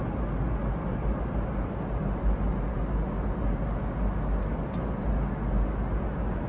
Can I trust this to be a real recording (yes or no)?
yes